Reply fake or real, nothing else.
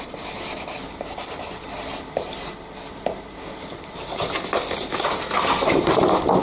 fake